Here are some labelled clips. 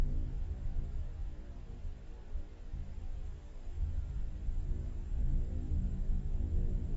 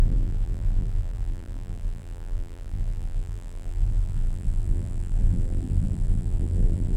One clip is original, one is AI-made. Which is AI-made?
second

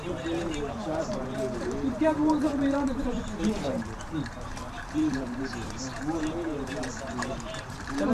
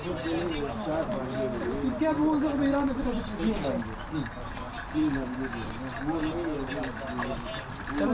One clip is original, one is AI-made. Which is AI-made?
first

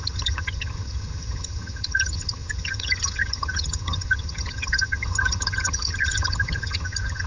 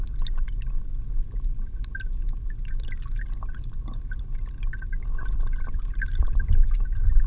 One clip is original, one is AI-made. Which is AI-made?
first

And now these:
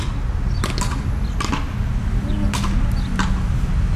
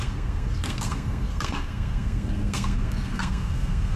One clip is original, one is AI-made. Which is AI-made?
second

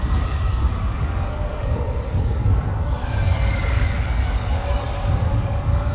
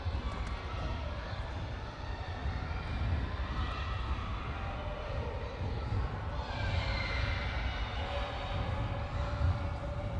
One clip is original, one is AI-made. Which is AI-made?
first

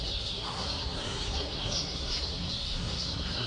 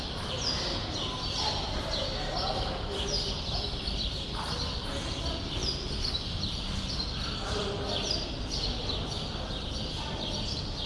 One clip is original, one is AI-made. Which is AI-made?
first